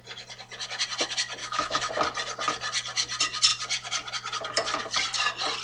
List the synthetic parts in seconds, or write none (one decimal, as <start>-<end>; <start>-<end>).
1.4-1.9